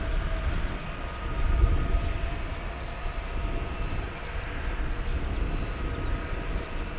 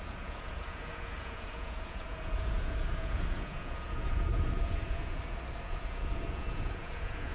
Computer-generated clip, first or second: second